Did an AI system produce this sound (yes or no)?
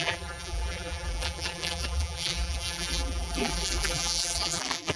yes